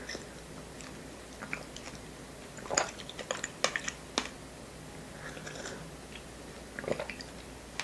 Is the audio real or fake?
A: real